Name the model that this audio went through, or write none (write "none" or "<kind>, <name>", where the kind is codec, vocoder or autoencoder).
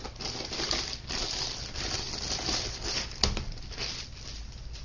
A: none